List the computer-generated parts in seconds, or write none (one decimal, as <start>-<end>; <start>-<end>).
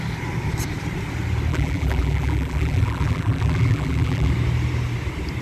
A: 1.5-4.3